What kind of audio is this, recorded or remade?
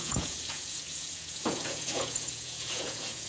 remade